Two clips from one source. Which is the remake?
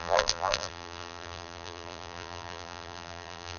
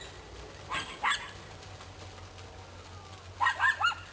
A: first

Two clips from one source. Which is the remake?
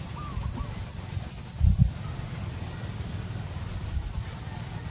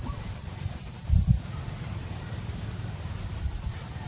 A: second